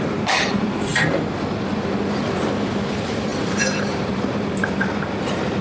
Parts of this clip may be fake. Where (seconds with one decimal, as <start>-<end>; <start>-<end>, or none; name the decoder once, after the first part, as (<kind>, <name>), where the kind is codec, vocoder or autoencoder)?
0.0-0.9 (vocoder, BigVGAN v2); 2.9-5.6